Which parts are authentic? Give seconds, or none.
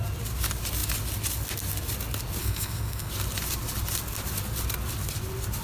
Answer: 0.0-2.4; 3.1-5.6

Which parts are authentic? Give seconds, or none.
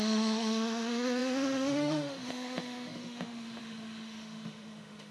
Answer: none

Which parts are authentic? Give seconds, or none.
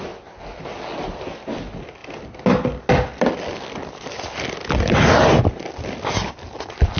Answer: 0.0-7.0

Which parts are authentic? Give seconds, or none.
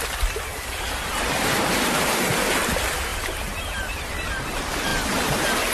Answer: 0.0-0.5; 1.3-3.1; 4.3-5.7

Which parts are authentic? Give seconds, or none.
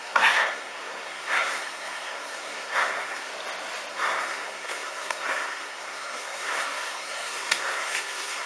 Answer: 3.3-3.9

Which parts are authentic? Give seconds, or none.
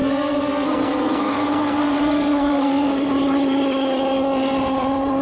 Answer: 3.1-5.2